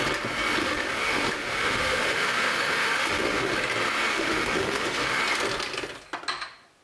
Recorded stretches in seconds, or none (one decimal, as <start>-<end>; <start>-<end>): 0.0-0.6; 3.5-4.1; 5.2-6.8